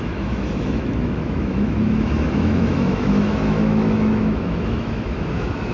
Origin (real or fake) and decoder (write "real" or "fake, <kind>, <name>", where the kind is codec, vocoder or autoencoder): fake, autoencoder, DAC-VAE